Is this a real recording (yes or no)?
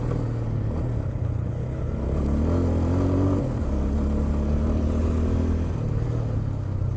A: yes